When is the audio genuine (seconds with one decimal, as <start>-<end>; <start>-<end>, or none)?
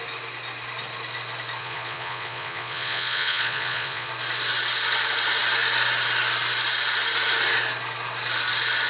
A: 0.0-1.6; 4.1-8.9